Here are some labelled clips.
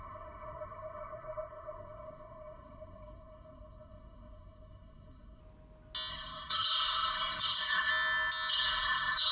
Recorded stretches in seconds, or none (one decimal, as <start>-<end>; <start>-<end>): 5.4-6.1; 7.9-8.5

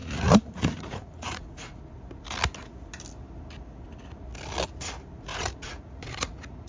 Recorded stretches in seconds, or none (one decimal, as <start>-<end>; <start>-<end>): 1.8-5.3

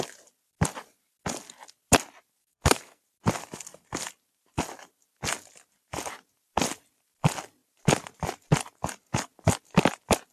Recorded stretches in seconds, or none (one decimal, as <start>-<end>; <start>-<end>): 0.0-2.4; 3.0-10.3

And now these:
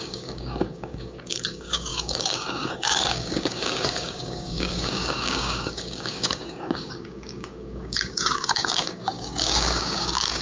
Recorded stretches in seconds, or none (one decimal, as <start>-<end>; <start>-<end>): none

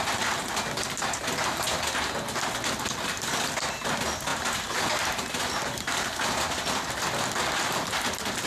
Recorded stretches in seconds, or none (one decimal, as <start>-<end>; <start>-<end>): 0.0-8.5

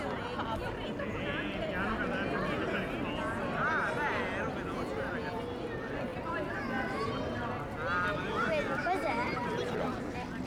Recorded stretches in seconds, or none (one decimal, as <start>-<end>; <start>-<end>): 0.0-8.8; 9.7-10.5